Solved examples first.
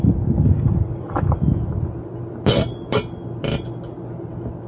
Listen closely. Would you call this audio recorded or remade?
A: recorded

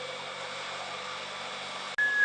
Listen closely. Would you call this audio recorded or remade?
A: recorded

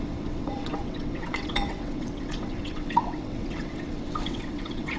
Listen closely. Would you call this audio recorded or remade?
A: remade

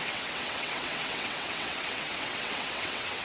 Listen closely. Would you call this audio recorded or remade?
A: remade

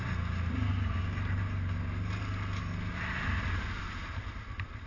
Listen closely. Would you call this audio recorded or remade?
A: recorded